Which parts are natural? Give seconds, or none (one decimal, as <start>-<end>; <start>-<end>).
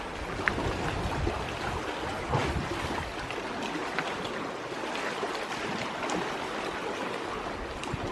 0.0-8.1